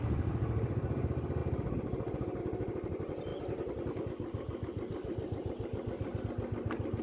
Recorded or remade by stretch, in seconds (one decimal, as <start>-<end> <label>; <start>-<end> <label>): 0.0-7.0 recorded